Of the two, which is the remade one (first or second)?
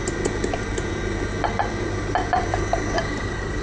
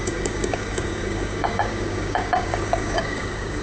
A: second